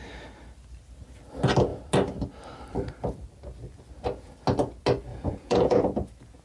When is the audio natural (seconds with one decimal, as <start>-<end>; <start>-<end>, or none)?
0.0-5.1; 5.8-6.4